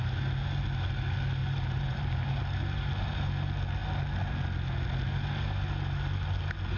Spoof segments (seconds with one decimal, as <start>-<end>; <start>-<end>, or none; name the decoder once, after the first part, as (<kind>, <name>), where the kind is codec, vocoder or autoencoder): 1.4-2.4 (vocoder, BigVGAN v2)